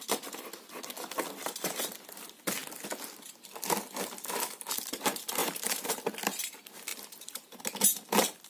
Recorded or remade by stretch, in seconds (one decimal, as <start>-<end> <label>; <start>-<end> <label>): 0.0-5.4 recorded; 5.4-6.0 remade; 6.0-6.9 recorded; 6.9-7.6 remade; 7.6-8.5 recorded